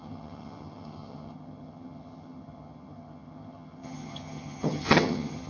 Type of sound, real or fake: fake